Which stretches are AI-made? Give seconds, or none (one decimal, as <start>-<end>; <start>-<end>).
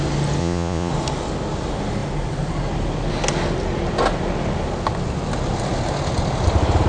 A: 0.4-0.9